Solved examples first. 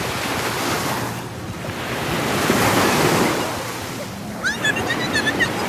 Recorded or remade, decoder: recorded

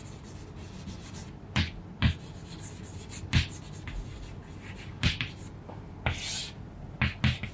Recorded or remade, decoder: recorded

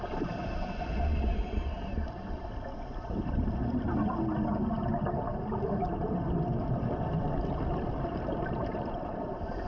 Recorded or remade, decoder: recorded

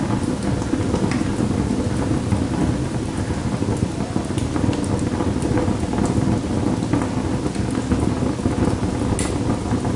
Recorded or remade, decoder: recorded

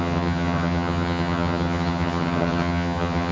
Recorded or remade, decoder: remade, vocoder, HiFi-GAN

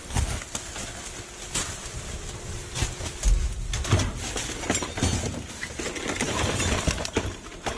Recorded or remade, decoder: recorded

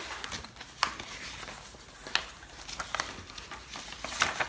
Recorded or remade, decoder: recorded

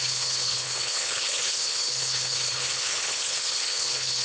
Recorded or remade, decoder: remade, codec, HILCodec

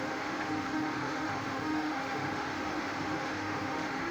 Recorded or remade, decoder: remade, autoencoder, DAC-VAE